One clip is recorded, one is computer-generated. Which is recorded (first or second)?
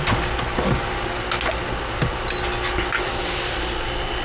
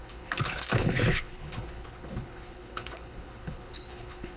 first